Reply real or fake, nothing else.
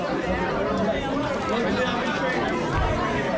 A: real